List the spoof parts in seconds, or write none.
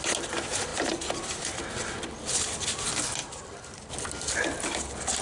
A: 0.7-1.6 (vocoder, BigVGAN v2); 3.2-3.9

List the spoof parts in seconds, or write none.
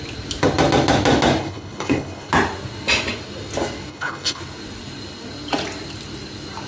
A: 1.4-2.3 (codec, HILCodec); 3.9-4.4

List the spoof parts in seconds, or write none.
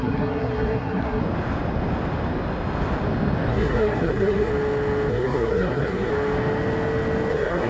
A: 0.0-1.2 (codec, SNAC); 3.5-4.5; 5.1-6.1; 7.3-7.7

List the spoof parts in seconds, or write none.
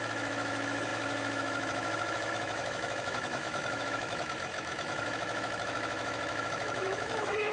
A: 0.0-7.5 (autoencoder, DAC-VAE)